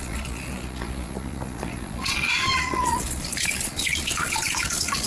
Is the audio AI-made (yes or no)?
yes